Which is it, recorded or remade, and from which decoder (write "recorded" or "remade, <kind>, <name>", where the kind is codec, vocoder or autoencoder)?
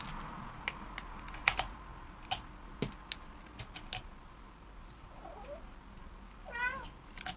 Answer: recorded